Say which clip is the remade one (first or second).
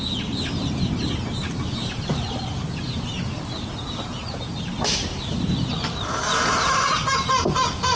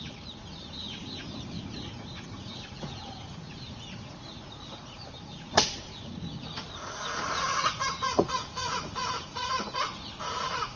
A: second